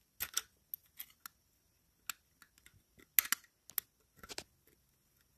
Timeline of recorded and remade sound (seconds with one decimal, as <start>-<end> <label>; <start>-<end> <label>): 0.0-5.4 recorded